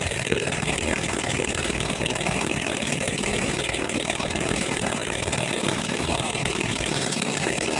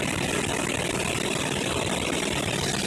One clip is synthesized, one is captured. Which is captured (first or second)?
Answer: second